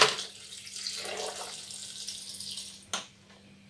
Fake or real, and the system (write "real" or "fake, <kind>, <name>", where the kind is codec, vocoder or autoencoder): real